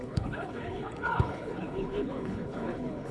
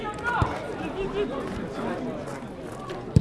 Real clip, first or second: second